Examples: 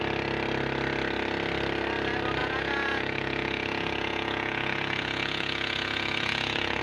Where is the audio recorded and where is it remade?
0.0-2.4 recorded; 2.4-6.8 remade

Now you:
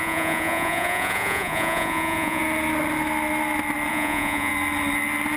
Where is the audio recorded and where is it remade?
0.0-2.4 remade; 2.4-3.9 recorded; 3.9-4.5 remade; 4.5-5.4 recorded

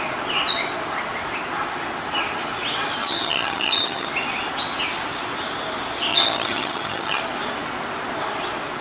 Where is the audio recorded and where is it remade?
0.0-3.0 recorded; 3.0-4.1 remade; 4.1-6.1 recorded; 6.1-7.2 remade; 7.2-8.8 recorded

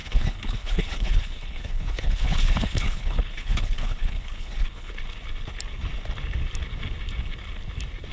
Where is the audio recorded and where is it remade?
0.0-4.9 remade; 4.9-8.1 recorded

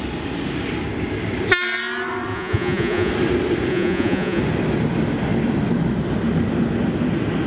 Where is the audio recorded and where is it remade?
0.0-2.3 recorded; 2.3-3.1 remade; 3.1-3.7 recorded; 3.7-4.4 remade; 4.4-7.5 recorded

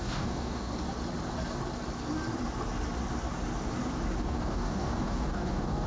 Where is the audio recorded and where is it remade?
0.0-0.7 remade; 0.7-4.2 recorded; 4.2-5.9 remade

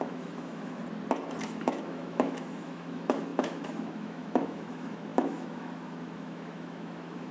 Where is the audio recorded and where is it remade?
0.0-0.8 remade; 0.8-1.4 recorded; 1.4-7.3 remade

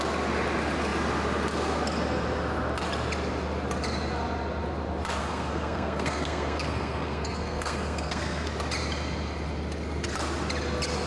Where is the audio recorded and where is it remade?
0.0-5.2 recorded; 5.2-8.5 remade; 8.5-11.1 recorded